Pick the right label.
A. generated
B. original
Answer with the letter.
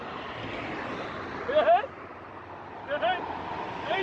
B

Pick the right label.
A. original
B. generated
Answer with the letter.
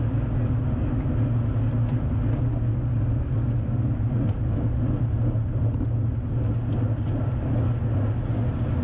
A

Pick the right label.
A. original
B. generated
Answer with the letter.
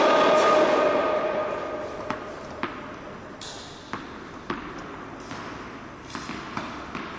A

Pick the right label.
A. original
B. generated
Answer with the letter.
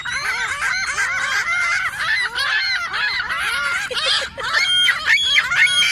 B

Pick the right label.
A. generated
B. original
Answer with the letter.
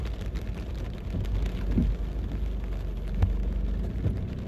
B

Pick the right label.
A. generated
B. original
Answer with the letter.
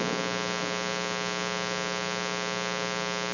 B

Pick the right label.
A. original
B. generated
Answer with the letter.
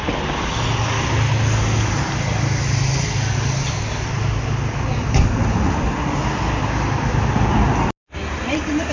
A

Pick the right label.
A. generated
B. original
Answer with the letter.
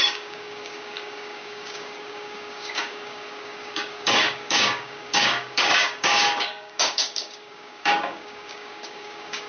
A